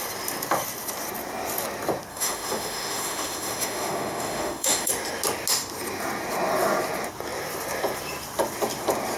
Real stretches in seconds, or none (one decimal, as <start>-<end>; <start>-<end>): 0.0-2.1; 4.9-9.2